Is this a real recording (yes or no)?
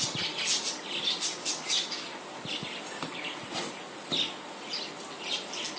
yes